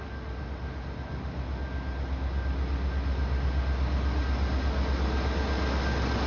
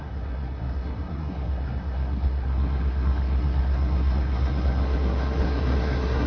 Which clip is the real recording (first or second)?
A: first